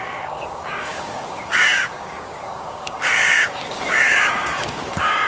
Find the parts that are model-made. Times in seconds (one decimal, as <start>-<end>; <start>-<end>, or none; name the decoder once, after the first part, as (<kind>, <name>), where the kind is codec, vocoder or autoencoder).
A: 0.0-5.3 (codec, DAC)